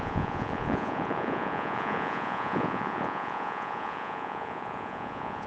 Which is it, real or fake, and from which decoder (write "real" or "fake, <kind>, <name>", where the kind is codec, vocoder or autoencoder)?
fake, vocoder, Vocos